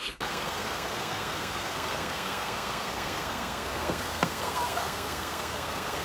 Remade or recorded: remade